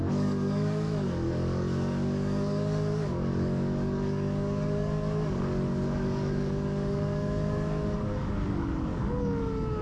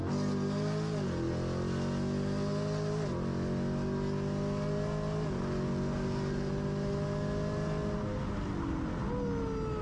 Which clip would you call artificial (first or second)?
first